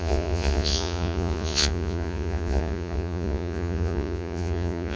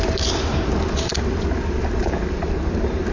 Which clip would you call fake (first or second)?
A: first